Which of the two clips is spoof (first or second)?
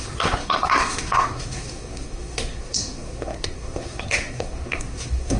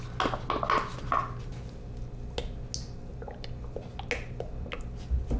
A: first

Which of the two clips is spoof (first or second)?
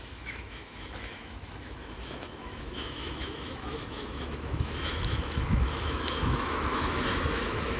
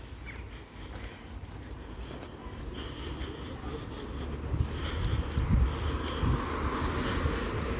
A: first